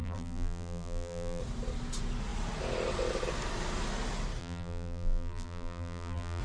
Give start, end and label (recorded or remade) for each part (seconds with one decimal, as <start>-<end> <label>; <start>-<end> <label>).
0.0-1.4 remade; 1.4-4.4 recorded; 4.4-6.4 remade